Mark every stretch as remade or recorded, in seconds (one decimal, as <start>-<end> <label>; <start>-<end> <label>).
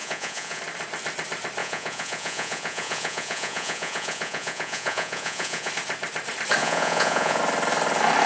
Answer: 0.0-0.6 remade; 0.6-1.6 recorded; 1.6-5.7 remade; 5.7-6.6 recorded; 6.6-7.4 remade; 7.4-8.3 recorded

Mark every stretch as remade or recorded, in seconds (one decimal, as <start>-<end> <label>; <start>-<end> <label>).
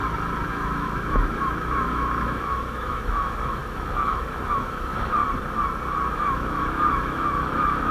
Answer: 0.0-0.5 recorded; 0.5-5.2 remade; 5.2-6.1 recorded; 6.1-7.9 remade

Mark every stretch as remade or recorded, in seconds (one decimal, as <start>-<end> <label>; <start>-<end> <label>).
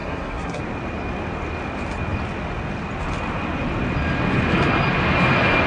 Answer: 0.0-0.6 remade; 0.6-5.7 recorded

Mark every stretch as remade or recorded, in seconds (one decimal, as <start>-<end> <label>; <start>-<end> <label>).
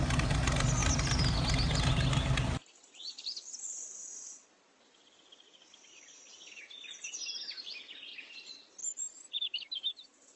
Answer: 0.0-0.8 recorded; 0.8-4.3 remade; 4.3-8.8 recorded; 8.8-10.4 remade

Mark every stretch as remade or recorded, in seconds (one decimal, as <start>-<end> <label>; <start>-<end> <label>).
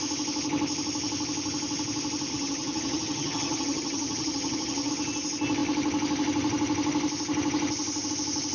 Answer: 0.0-2.3 recorded; 2.3-4.9 remade; 4.9-8.5 recorded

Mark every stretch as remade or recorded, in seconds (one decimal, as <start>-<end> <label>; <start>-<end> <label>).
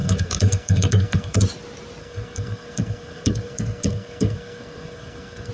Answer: 0.0-1.4 remade; 1.4-2.0 recorded; 2.0-5.5 remade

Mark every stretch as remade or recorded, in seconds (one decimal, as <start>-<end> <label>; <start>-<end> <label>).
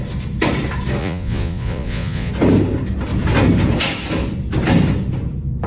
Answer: 0.0-1.0 recorded; 1.0-2.3 remade; 2.3-5.7 recorded